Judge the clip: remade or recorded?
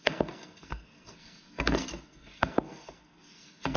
remade